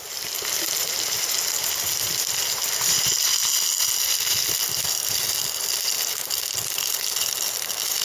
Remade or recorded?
recorded